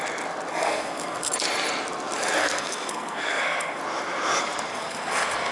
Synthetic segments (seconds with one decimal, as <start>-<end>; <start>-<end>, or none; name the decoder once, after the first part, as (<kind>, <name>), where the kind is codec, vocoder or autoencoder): 0.5-1.3 (codec, SNAC); 2.4-3.8; 4.7-5.5